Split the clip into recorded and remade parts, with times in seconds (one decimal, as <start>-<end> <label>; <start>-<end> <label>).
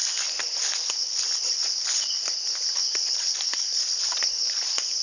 0.0-5.0 recorded